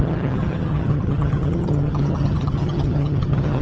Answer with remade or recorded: remade